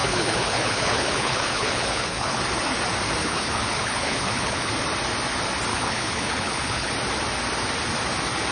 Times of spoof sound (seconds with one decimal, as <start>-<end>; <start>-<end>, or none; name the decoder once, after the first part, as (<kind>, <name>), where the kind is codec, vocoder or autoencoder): 0.0-2.4 (codec, HILCodec); 3.2-4.7; 5.7-6.9